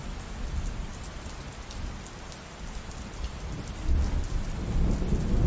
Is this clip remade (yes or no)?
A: no